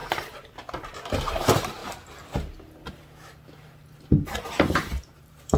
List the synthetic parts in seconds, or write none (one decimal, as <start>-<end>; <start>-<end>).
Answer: 0.0-1.8; 2.9-5.6